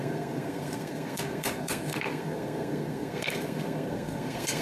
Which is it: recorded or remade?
remade